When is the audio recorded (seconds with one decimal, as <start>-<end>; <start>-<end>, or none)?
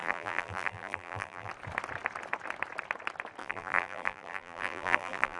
1.5-3.4